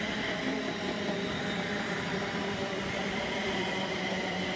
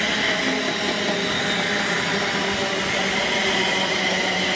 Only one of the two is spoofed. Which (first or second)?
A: first